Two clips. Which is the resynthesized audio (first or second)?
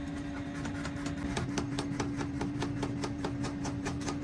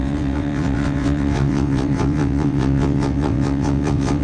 second